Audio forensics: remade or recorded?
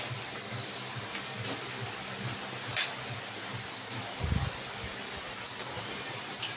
recorded